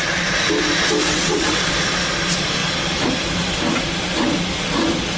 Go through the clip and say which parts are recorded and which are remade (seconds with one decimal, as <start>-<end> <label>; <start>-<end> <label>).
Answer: 0.0-1.1 recorded; 1.1-1.7 remade; 1.7-5.2 recorded